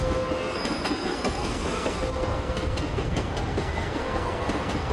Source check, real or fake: fake